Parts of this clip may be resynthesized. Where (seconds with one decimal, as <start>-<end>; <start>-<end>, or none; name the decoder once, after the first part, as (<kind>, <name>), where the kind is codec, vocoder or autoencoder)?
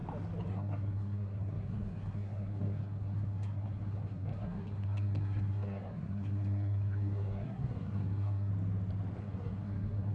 0.5-8.5 (codec, SNAC); 9.2-10.1